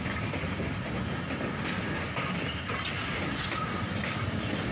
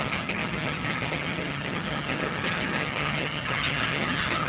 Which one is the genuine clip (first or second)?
first